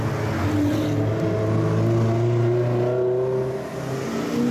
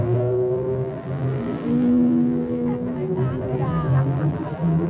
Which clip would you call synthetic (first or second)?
second